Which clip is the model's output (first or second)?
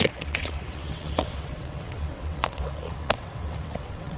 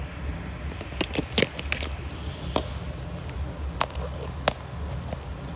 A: first